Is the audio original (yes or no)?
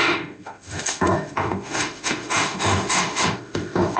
no